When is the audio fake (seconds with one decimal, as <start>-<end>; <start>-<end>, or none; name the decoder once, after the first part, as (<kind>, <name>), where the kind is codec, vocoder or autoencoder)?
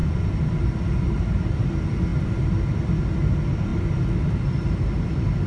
none